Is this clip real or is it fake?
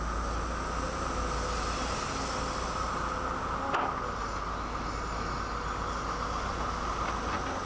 real